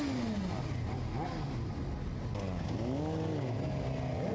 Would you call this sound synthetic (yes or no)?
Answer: no